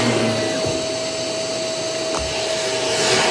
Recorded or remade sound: recorded